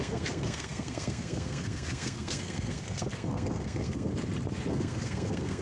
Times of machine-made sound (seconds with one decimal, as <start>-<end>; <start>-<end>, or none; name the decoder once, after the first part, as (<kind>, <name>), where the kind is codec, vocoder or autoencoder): 0.0-4.1 (codec, SNAC); 4.7-5.6